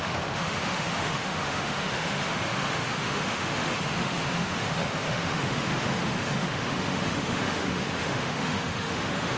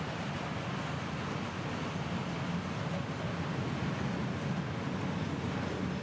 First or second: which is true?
second